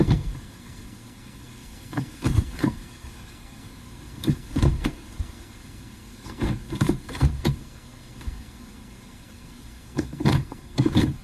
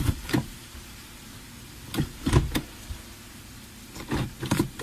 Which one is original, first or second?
second